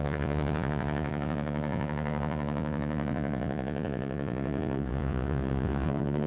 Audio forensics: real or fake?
fake